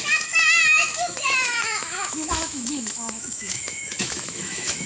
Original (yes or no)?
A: no